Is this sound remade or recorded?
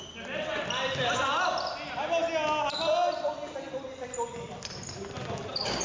recorded